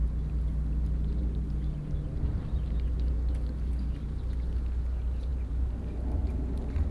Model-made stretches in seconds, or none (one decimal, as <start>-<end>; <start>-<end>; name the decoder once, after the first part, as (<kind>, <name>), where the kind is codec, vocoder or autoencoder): none